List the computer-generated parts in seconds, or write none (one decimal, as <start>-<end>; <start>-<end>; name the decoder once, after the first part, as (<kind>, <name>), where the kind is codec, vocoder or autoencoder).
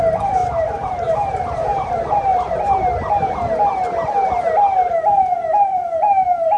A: 0.0-2.9 (vocoder, BigVGAN v2); 5.2-6.6